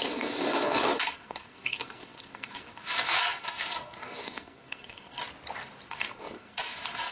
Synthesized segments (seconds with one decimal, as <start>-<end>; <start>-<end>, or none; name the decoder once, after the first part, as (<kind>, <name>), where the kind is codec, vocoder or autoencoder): 0.0-5.2 (codec, SNAC); 5.9-7.1